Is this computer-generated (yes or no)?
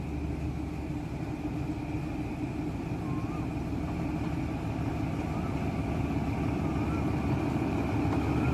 no